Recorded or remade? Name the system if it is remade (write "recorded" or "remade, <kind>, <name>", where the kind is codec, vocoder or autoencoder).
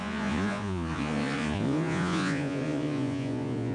remade, vocoder, Vocos